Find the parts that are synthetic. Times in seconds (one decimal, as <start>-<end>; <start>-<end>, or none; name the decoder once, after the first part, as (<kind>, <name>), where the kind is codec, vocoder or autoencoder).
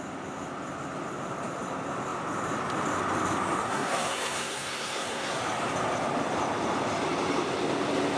3.6-5.4 (codec, SNAC)